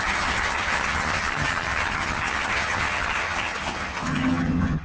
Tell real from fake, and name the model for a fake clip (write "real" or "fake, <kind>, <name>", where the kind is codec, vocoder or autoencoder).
fake, vocoder, HiFi-GAN